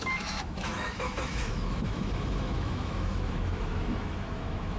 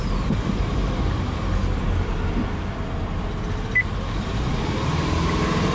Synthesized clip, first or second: first